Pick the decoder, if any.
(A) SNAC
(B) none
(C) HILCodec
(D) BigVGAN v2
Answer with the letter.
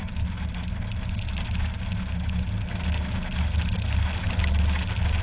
B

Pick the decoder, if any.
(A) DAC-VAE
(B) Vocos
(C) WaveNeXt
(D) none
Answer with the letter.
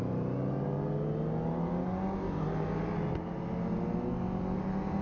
D